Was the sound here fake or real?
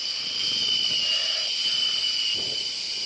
real